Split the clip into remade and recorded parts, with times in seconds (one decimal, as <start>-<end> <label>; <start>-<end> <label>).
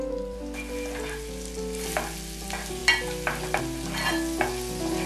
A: 0.0-5.1 recorded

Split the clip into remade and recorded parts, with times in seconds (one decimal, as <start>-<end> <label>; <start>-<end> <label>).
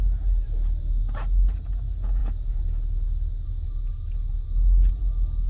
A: 0.0-5.5 recorded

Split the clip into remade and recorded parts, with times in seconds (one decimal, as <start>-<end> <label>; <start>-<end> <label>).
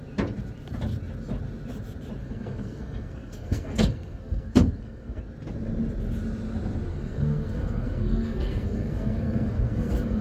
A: 0.0-2.2 recorded; 2.2-5.2 remade; 5.2-6.9 recorded; 6.9-10.2 remade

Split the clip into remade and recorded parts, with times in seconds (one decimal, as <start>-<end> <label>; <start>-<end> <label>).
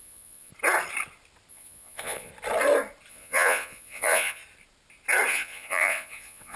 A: 0.0-0.5 remade; 0.5-1.5 recorded; 1.5-2.3 remade; 2.3-3.1 recorded; 3.1-4.4 remade; 4.4-5.3 recorded; 5.3-6.6 remade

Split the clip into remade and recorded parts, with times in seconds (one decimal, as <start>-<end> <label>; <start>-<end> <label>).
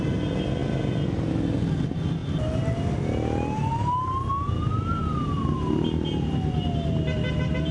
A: 0.0-7.7 recorded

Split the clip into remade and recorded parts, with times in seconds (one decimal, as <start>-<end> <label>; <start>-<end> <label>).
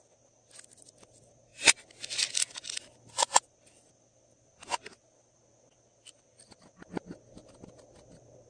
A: 0.0-8.5 recorded